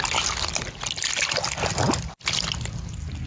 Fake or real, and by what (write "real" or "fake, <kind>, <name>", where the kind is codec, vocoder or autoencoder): real